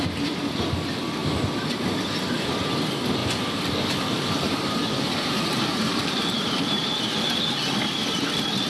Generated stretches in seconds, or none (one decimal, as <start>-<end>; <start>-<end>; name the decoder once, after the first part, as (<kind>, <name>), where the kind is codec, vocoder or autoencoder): 3.2-6.9 (vocoder, BigVGAN v2)